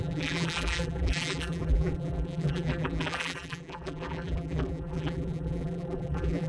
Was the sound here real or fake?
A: fake